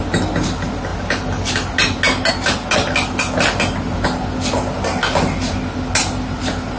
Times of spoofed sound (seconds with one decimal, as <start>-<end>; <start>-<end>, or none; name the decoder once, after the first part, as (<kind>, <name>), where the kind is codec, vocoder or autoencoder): none